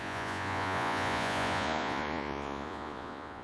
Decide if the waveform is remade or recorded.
remade